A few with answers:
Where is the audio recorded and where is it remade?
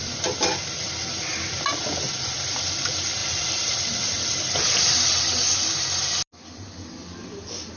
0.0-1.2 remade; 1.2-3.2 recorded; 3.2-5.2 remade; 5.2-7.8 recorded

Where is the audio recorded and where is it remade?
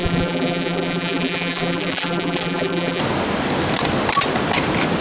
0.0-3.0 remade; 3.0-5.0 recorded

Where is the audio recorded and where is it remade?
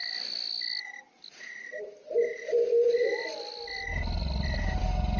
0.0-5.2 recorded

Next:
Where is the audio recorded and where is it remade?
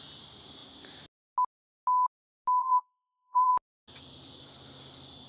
0.0-2.6 recorded; 2.6-3.5 remade; 3.5-5.3 recorded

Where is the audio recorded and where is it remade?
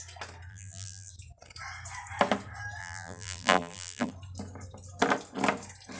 0.0-0.5 recorded; 0.5-1.1 remade; 1.1-2.8 recorded; 2.8-4.1 remade; 4.1-6.0 recorded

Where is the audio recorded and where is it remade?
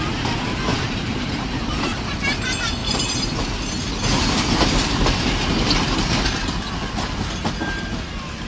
0.0-0.7 recorded; 0.7-2.1 remade; 2.1-2.8 recorded; 2.8-3.3 remade; 3.3-8.5 recorded